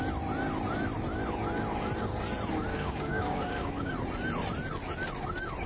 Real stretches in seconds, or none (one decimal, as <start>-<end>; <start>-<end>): 0.0-2.7; 3.9-5.7